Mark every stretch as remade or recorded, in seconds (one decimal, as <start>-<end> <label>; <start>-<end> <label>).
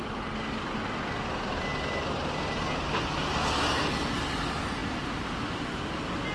0.0-6.3 recorded